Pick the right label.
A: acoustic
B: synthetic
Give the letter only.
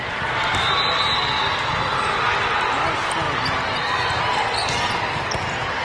A